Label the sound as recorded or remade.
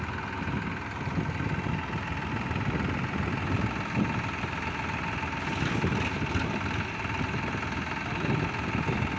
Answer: recorded